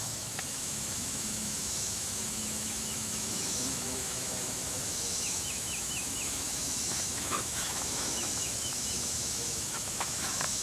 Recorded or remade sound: remade